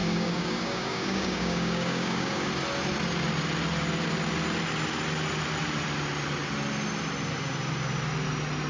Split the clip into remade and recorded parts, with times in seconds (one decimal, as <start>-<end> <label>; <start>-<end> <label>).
0.0-2.5 remade; 2.5-8.7 recorded